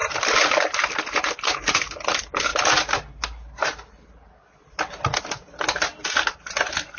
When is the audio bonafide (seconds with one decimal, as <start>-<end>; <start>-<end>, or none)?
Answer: 0.0-0.9; 2.5-6.6